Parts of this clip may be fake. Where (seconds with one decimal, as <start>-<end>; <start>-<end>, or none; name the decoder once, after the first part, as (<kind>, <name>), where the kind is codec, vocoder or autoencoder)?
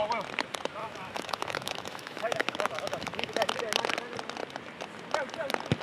0.8-3.5 (autoencoder, DAC-VAE)